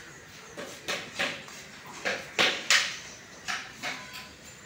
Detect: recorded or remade recorded